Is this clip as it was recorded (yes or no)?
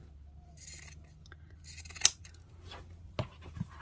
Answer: yes